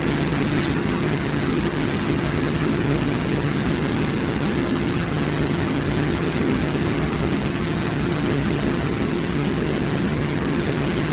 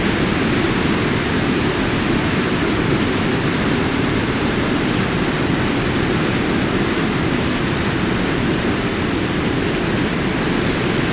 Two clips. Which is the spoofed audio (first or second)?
first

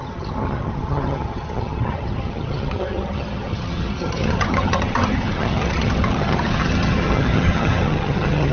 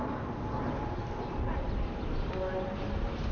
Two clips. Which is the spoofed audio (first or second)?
first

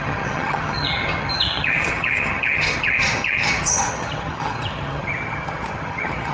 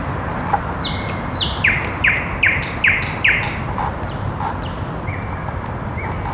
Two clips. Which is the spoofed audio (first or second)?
first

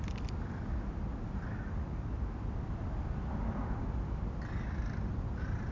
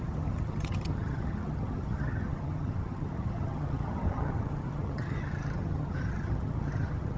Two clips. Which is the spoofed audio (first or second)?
second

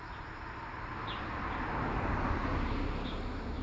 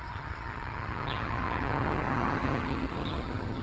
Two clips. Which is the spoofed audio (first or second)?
second